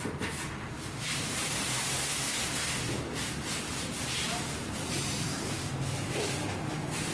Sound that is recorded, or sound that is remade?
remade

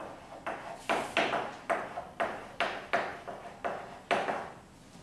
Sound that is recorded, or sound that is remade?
recorded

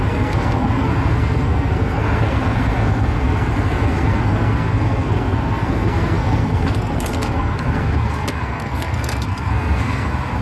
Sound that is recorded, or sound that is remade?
remade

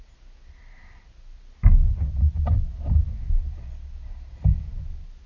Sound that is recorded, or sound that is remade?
recorded